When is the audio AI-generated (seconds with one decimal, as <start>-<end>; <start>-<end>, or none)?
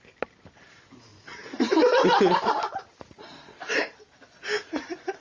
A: 1.1-4.2